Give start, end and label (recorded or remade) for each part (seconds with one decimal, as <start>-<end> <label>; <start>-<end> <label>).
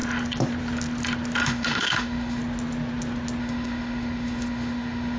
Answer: 0.0-1.4 recorded; 1.4-2.4 remade; 2.4-3.4 recorded; 3.4-5.2 remade